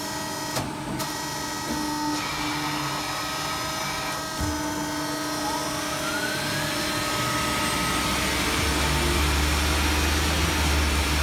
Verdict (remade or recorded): recorded